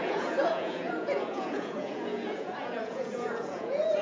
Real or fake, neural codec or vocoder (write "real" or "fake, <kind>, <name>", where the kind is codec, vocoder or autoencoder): fake, vocoder, Vocos